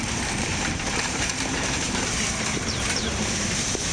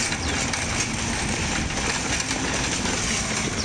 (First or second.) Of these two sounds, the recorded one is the second